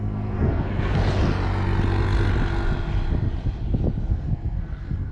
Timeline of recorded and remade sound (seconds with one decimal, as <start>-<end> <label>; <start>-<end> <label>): 0.0-1.0 remade; 1.0-4.1 recorded; 4.1-5.1 remade